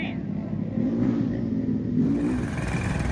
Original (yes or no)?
yes